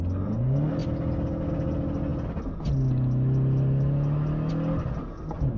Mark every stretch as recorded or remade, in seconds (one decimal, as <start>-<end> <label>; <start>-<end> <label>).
0.0-5.6 recorded